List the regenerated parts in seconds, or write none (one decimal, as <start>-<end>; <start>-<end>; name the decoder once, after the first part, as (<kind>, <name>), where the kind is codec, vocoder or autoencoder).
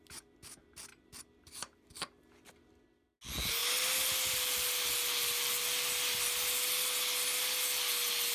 0.9-1.9 (vocoder, BigVGAN v2)